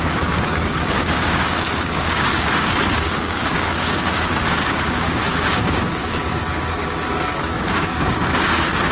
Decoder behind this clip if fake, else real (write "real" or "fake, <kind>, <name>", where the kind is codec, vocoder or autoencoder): fake, codec, DAC